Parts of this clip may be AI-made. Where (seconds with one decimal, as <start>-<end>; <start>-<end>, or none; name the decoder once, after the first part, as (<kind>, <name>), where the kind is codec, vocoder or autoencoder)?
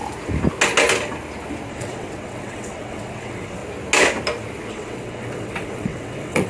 1.7-3.6 (vocoder, WaveNeXt); 4.7-6.5